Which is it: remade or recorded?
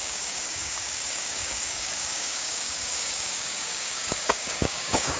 remade